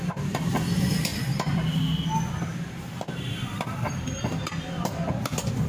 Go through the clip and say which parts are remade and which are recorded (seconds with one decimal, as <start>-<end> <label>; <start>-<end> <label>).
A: 0.0-5.7 recorded